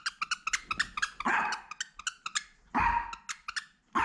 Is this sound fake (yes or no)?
no